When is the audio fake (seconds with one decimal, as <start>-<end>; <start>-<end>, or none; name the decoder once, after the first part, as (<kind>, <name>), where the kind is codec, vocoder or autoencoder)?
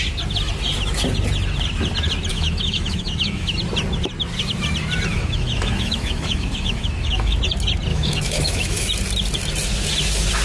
2.3-3.5 (autoencoder, DAC-VAE); 5.1-7.4; 7.9-8.9